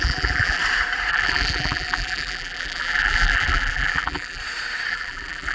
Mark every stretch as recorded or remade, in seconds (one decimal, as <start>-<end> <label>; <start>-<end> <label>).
0.0-0.6 remade; 0.6-1.1 recorded; 1.1-4.4 remade; 4.4-4.9 recorded; 4.9-5.5 remade